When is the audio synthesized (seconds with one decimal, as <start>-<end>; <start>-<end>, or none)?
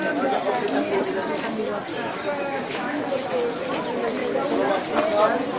1.9-3.4